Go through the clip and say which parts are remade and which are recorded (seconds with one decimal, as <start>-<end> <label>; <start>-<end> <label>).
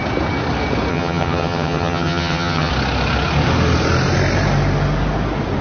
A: 0.0-0.9 recorded; 0.9-2.7 remade; 2.7-5.6 recorded